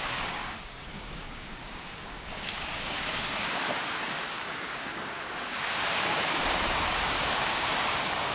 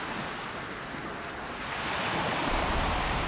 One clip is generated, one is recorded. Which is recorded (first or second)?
second